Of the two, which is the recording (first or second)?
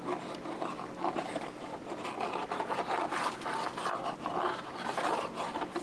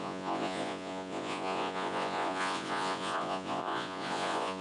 first